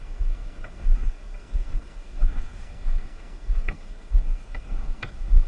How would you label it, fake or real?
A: fake